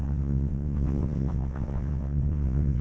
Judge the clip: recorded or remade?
remade